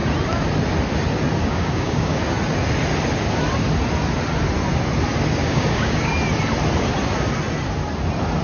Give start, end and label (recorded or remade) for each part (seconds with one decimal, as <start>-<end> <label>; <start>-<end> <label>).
0.0-1.4 recorded; 1.4-2.2 remade; 2.2-5.4 recorded; 5.4-6.1 remade; 6.1-8.4 recorded